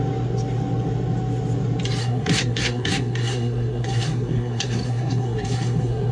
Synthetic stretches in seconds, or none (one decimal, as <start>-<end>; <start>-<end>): 2.0-6.1